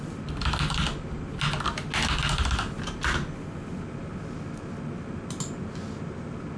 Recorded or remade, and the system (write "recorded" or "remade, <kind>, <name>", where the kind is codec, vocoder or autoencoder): recorded